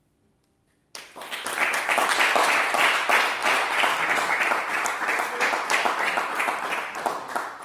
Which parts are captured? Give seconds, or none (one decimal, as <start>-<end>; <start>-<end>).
0.8-2.3